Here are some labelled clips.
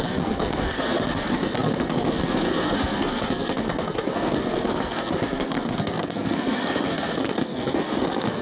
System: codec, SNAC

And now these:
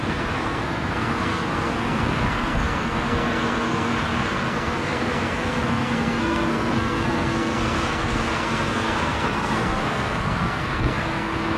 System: codec, SNAC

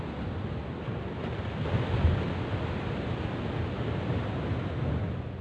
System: none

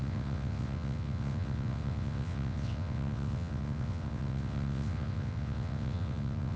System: vocoder, WaveNeXt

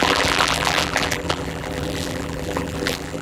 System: vocoder, BigVGAN v2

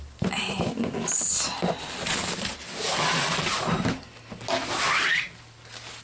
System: none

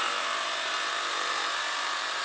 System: vocoder, BigVGAN v2